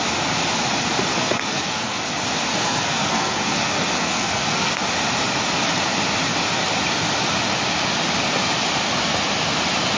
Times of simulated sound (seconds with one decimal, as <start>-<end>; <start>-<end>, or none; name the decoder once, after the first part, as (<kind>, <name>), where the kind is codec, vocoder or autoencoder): 1.1-2.0 (codec, SNAC); 2.5-4.7

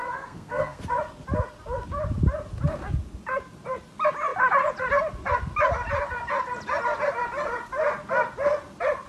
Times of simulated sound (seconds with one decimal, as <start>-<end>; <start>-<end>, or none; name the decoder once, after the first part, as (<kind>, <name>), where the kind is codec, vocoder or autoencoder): 0.0-0.8 (codec, SNAC)

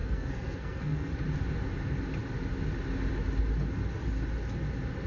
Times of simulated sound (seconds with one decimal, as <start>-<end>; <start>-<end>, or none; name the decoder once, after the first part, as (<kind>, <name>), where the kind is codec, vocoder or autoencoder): 0.0-1.1 (codec, SNAC)

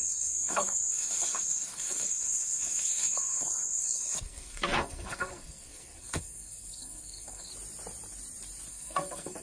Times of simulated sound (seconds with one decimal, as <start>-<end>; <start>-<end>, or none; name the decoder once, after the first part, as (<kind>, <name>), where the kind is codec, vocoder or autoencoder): 0.0-7.5 (codec, SNAC); 8.7-9.4